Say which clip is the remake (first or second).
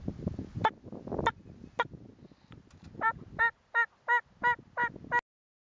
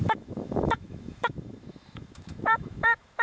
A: second